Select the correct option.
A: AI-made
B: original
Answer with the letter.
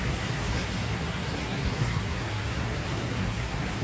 A